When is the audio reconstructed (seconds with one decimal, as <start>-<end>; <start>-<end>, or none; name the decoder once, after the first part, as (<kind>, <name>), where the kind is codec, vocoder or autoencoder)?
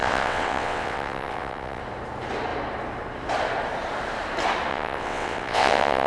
0.0-1.8 (vocoder, WaveNeXt); 4.7-6.1